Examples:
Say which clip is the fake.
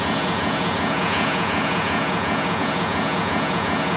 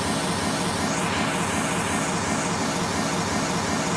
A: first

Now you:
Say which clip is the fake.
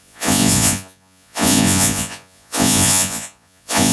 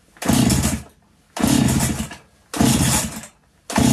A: first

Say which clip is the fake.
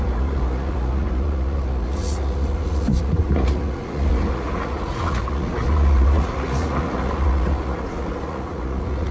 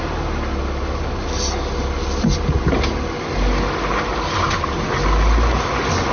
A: first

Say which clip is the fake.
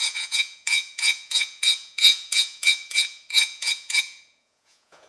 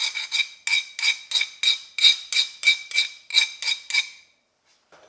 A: first